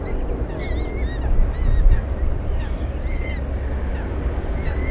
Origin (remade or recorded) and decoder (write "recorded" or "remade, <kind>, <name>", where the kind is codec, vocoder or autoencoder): recorded